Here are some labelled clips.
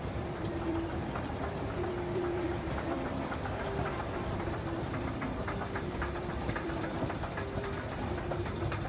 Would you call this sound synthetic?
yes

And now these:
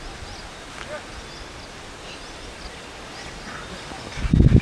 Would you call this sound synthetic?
no